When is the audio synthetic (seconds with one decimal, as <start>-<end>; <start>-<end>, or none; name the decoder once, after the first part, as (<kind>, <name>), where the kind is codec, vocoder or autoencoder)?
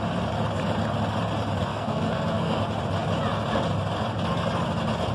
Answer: 1.7-2.6 (codec, SNAC)